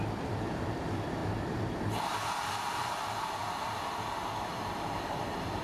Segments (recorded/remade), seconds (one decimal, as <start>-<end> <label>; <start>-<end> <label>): 0.0-3.4 remade; 3.4-4.5 recorded; 4.5-5.6 remade

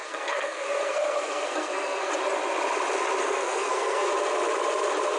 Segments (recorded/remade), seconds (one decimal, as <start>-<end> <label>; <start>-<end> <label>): 0.0-2.1 remade; 2.1-3.2 recorded; 3.2-4.1 remade; 4.1-5.2 recorded

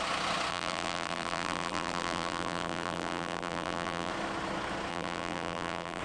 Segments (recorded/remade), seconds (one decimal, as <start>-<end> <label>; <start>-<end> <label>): 0.0-0.5 recorded; 0.5-4.1 remade; 4.1-4.9 recorded; 4.9-6.0 remade